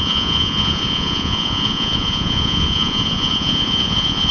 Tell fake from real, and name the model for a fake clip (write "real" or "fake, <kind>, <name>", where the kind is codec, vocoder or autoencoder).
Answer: fake, vocoder, Vocos